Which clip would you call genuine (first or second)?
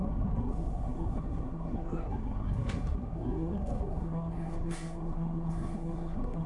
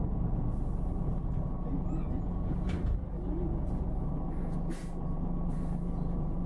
second